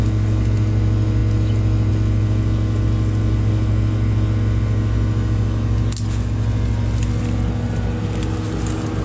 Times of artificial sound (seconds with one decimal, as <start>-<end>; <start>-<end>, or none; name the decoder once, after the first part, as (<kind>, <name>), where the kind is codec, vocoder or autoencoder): none